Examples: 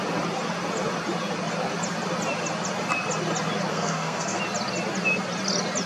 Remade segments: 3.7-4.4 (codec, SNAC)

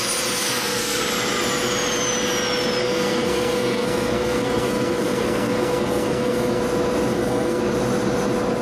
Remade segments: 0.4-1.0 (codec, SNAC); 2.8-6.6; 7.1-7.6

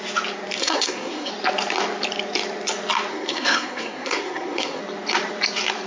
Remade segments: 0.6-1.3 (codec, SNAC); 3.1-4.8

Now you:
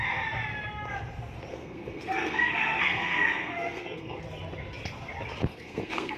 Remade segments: 1.5-4.2 (codec, SNAC); 5.5-6.2

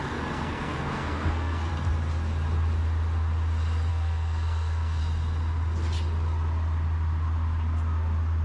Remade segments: 0.0-1.7 (codec, SNAC); 3.9-5.0

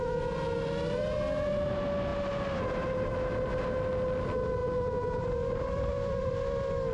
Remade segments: none